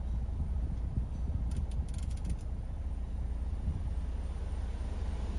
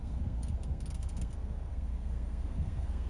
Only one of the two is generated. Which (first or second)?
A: second